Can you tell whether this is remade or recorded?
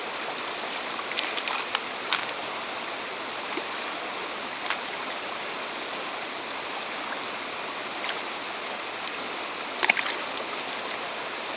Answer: recorded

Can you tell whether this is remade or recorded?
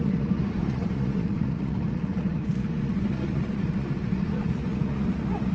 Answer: remade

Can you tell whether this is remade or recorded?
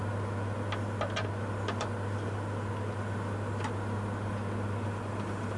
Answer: recorded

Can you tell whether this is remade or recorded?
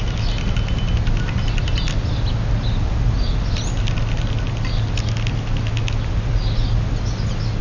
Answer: recorded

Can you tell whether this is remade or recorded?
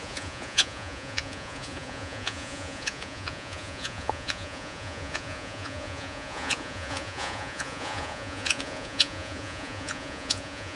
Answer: remade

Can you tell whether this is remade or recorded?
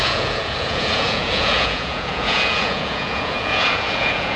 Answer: remade